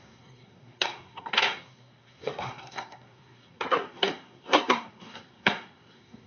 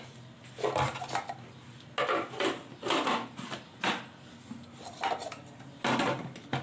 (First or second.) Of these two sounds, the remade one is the first